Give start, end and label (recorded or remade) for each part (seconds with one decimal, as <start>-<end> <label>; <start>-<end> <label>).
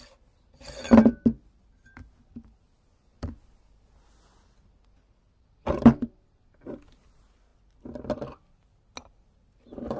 0.0-10.0 recorded